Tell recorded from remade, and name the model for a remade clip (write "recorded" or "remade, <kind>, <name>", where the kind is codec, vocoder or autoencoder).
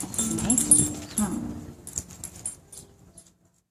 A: recorded